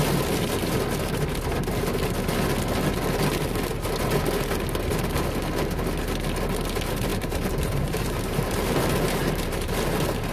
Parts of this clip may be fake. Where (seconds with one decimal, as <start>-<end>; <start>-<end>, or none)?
7.1-10.3